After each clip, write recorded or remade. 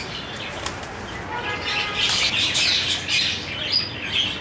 recorded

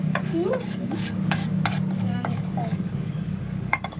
remade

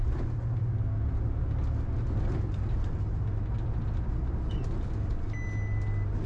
recorded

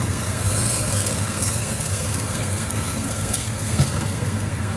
remade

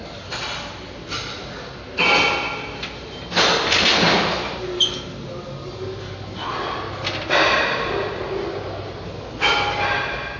recorded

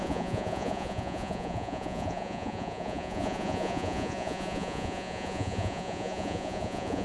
remade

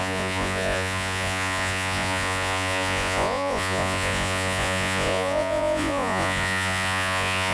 remade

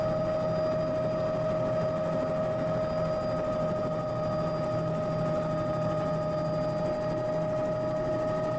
recorded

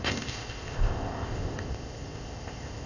remade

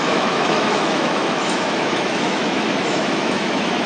remade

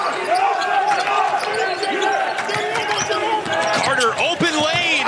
recorded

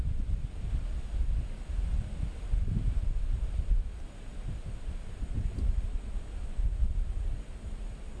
recorded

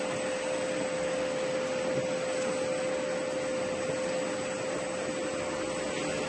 recorded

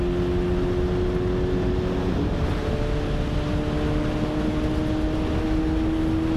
recorded